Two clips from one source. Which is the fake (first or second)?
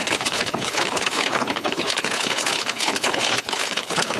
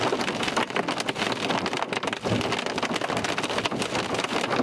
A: first